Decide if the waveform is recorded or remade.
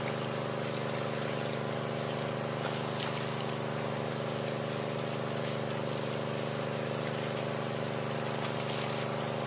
recorded